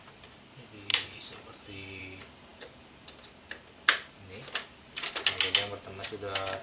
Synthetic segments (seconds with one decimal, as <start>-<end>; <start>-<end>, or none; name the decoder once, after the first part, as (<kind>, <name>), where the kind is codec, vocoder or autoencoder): 0.9-2.0 (vocoder, BigVGAN v2)